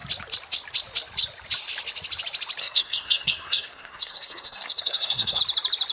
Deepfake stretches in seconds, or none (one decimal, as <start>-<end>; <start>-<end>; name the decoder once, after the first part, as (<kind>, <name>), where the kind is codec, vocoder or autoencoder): 2.6-5.4 (codec, SNAC)